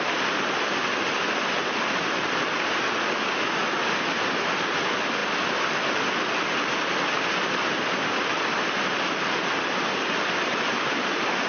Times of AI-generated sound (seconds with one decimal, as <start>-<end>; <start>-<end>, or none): none